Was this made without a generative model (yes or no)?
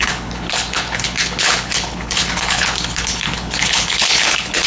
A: no